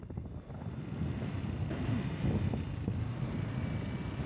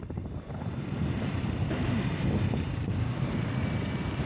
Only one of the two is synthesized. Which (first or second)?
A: second